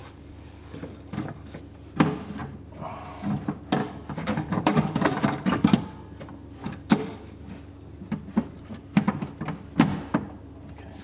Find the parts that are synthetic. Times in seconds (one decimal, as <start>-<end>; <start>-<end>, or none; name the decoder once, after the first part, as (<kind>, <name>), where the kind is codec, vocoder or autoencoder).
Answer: 0.0-1.6 (codec, DAC); 3.8-5.8; 6.6-7.7